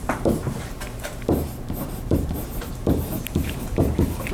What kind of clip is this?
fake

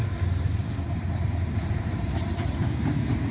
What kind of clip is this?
fake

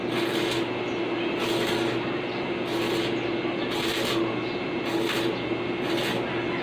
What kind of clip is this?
fake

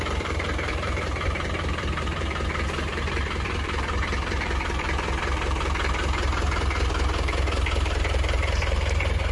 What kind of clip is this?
fake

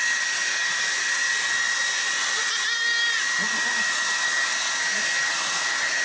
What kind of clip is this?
real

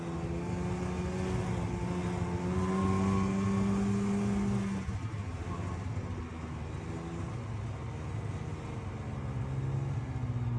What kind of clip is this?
real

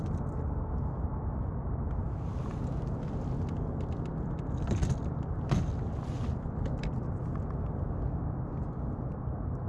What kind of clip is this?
real